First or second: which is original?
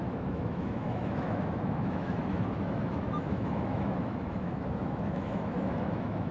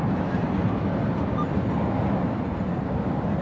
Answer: second